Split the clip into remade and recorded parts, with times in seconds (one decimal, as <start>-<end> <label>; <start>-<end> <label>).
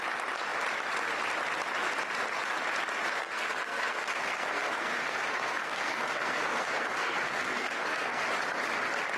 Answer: 0.0-3.2 recorded; 3.2-8.2 remade; 8.2-9.2 recorded